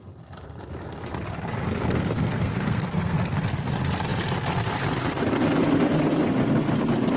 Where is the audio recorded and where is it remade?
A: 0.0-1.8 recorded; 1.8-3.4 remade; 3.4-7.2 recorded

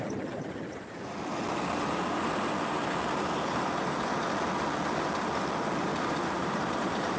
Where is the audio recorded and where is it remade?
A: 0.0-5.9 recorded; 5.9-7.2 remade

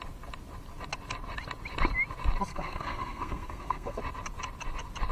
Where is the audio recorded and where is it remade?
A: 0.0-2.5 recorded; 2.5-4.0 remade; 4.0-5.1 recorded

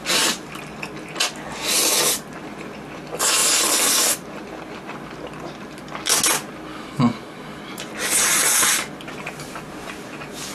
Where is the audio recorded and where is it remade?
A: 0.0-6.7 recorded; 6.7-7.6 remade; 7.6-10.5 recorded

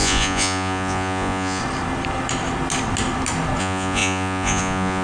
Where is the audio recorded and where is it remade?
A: 0.0-1.6 remade; 1.6-3.6 recorded; 3.6-5.0 remade